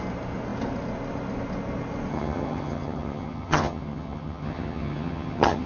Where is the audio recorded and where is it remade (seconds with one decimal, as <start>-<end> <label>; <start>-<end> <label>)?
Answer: 0.0-2.1 recorded; 2.1-5.7 remade